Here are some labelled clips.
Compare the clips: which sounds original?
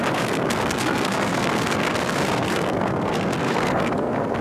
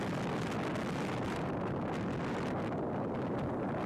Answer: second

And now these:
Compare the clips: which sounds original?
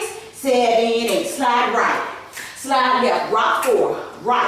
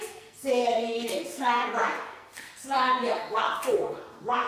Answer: first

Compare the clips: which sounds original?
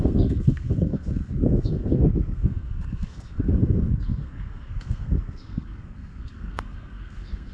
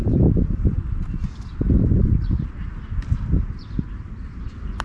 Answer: second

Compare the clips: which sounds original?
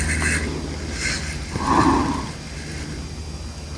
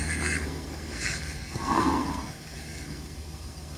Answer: first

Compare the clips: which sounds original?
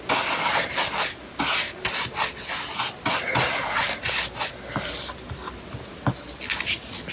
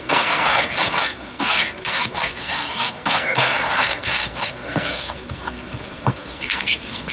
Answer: first